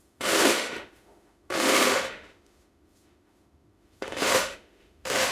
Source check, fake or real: fake